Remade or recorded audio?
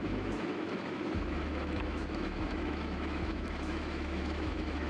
remade